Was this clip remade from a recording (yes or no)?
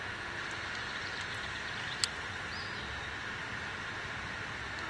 no